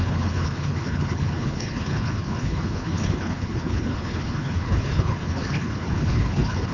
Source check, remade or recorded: remade